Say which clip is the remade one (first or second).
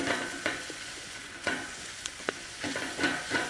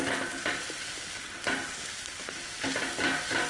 first